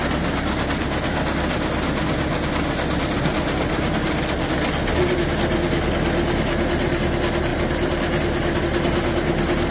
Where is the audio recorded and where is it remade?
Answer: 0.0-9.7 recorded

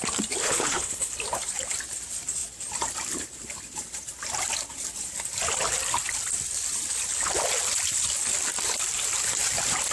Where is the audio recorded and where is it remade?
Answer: 0.0-0.4 recorded; 0.4-1.1 remade; 1.1-9.9 recorded

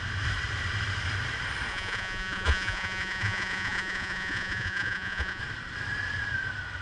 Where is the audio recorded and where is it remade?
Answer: 0.0-1.7 recorded; 1.7-5.4 remade; 5.4-6.8 recorded

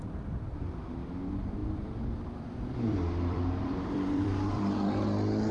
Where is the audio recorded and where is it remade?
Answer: 0.0-1.6 recorded; 1.6-4.9 remade; 4.9-5.5 recorded

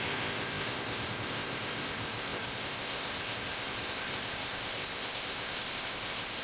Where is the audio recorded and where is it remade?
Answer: 0.0-6.4 remade